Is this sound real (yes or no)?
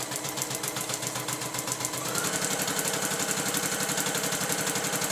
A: yes